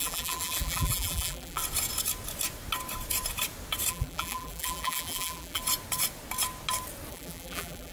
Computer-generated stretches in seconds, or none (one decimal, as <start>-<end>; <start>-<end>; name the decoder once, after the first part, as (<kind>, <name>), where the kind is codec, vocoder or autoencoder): 0.0-1.6 (vocoder, BigVGAN v2); 3.9-5.6; 7.1-7.9